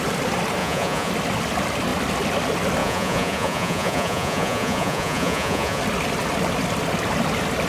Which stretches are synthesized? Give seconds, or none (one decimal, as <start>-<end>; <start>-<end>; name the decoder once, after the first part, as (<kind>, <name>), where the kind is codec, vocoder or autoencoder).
0.6-1.1 (vocoder, Vocos); 2.8-5.8